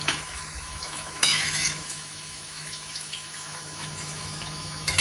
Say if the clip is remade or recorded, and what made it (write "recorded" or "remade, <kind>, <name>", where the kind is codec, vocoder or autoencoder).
remade, autoencoder, DAC-VAE